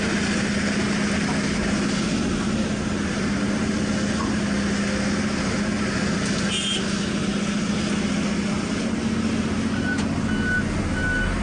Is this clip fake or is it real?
real